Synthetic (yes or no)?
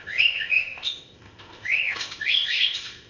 yes